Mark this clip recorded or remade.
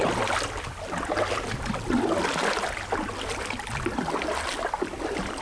recorded